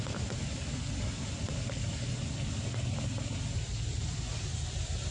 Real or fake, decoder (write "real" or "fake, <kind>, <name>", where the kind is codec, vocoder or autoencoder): real